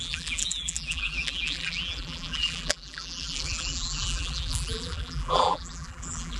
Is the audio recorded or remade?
remade